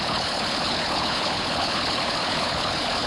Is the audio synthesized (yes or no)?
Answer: yes